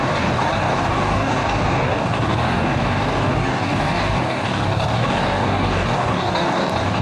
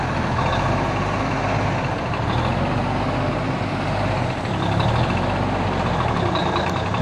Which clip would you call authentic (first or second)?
second